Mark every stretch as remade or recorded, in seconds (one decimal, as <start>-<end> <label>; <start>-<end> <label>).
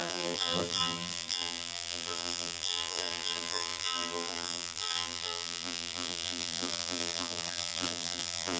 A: 0.0-8.6 remade